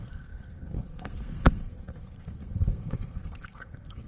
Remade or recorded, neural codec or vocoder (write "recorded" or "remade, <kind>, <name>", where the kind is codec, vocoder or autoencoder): remade, codec, SNAC